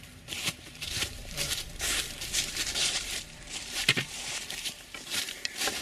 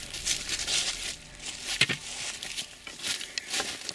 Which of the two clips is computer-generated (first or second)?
first